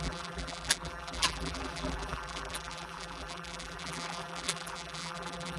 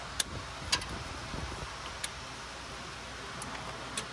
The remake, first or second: first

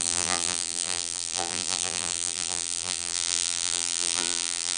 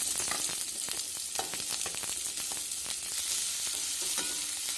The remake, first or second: first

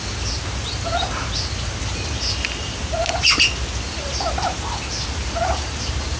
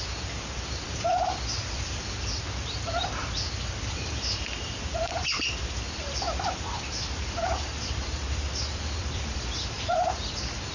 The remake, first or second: second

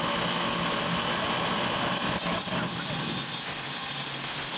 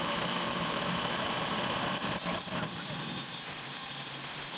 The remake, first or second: second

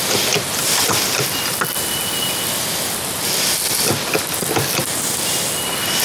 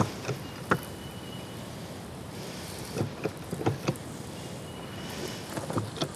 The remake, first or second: second